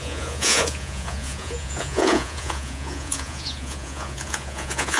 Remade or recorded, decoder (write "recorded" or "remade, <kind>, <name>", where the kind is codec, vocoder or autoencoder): remade, vocoder, Vocos